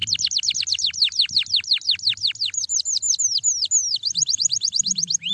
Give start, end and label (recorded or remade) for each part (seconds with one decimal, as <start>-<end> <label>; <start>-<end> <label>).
0.0-5.3 recorded